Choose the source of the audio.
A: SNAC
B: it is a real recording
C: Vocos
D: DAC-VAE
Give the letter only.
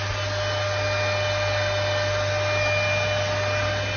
B